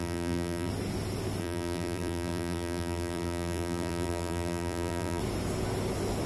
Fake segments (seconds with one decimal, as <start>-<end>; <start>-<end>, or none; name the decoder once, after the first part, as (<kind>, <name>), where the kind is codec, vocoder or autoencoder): 0.0-0.7 (vocoder, BigVGAN v2); 1.4-5.2